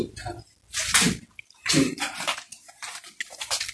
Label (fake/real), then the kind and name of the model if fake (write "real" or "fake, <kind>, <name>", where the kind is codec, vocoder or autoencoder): real